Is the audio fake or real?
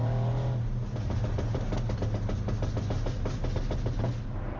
real